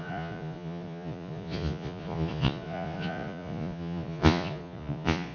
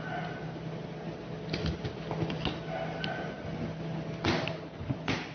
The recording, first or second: second